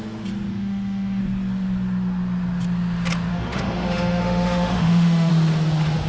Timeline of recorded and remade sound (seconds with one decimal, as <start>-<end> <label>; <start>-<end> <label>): 0.0-0.5 recorded; 0.5-1.2 remade; 1.2-3.3 recorded; 3.3-5.3 remade; 5.3-6.1 recorded